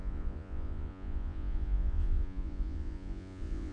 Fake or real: fake